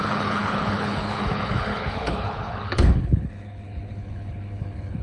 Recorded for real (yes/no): no